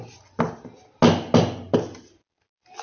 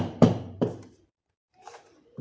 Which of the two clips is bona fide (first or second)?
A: first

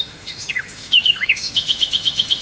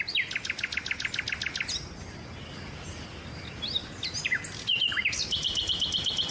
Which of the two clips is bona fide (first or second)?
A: second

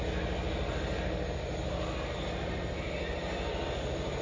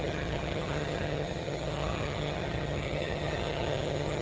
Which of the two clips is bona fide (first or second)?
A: first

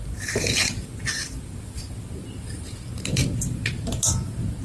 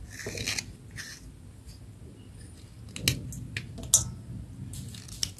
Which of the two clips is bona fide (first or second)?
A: second